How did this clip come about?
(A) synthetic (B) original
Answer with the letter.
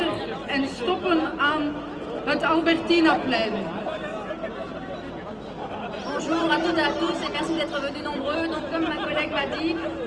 B